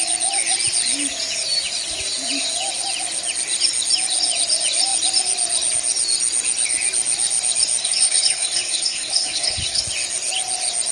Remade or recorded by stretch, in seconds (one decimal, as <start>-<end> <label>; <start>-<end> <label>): 0.0-7.8 recorded; 7.8-9.8 remade; 9.8-10.9 recorded